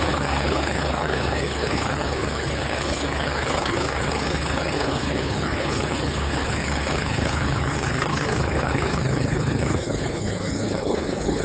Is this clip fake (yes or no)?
yes